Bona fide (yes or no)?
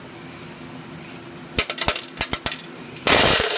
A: yes